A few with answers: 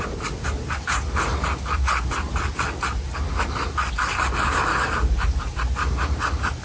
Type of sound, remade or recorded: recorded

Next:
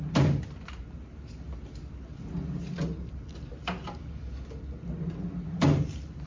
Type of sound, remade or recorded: recorded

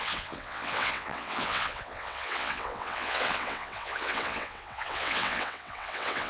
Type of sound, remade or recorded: remade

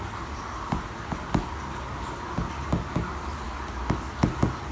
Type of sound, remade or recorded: recorded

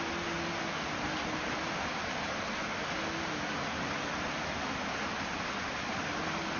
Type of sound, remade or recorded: recorded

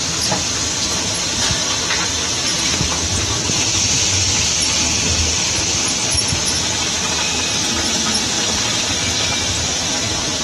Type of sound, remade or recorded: recorded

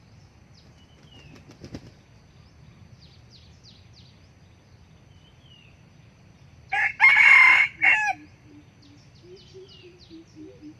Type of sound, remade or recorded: recorded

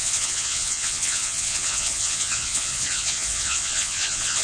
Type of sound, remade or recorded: remade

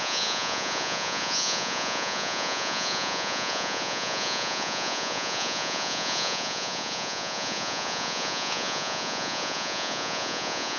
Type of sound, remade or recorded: remade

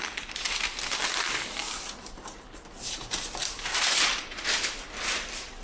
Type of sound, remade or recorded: remade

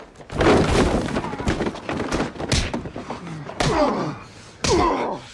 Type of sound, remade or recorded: recorded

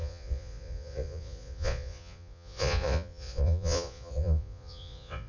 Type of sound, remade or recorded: remade